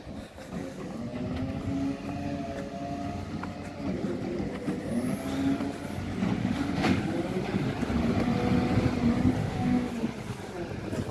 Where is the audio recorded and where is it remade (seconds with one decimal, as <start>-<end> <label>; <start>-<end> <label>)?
0.0-6.4 recorded; 6.4-7.0 remade; 7.0-9.4 recorded; 9.4-9.9 remade; 9.9-11.1 recorded